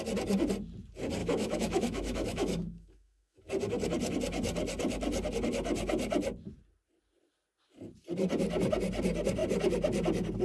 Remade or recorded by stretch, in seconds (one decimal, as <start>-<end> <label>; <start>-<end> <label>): 0.0-1.2 recorded; 1.2-3.5 remade; 3.5-10.4 recorded

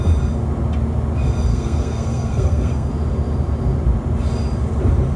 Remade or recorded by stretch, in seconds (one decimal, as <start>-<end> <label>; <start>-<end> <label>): 0.0-1.5 recorded; 1.5-2.9 remade; 2.9-5.2 recorded

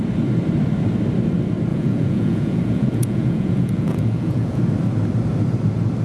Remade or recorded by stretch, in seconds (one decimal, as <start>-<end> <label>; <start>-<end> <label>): 0.0-1.7 recorded; 1.7-4.6 remade; 4.6-6.0 recorded

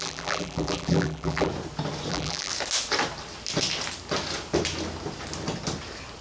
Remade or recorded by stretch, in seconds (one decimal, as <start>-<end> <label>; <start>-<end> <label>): 0.0-1.5 remade; 1.5-2.1 recorded; 2.1-2.5 remade; 2.5-6.2 recorded

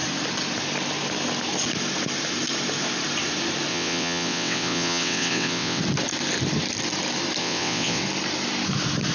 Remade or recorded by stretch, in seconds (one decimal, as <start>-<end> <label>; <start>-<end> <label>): 0.0-3.7 recorded; 3.7-5.8 remade; 5.8-7.4 recorded; 7.4-8.0 remade; 8.0-9.1 recorded

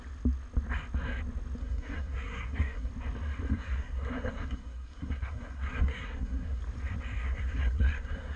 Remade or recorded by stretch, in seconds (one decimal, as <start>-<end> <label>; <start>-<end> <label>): 0.0-1.6 recorded; 1.6-2.9 remade; 2.9-3.5 recorded; 3.5-6.6 remade; 6.6-7.2 recorded; 7.2-8.4 remade

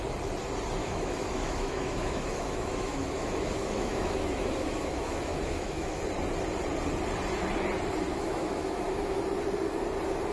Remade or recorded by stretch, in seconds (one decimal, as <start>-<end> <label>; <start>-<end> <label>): 0.0-0.8 recorded; 0.8-6.0 remade; 6.0-8.1 recorded; 8.1-9.2 remade; 9.2-10.3 recorded

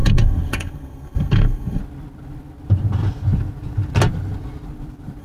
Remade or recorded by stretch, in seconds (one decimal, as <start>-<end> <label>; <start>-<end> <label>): 0.0-1.8 remade; 1.8-5.2 recorded